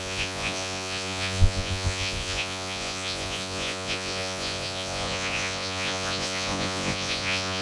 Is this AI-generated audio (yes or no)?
yes